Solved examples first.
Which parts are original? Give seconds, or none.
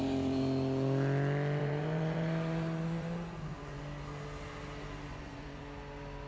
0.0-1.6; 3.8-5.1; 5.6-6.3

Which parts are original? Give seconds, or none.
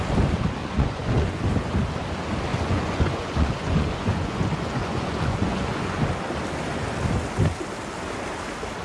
0.0-0.6; 1.4-2.5; 6.0-8.8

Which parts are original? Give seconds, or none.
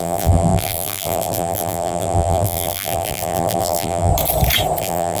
4.1-4.8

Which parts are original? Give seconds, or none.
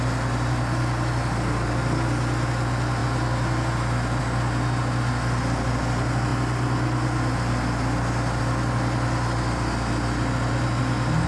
0.0-11.3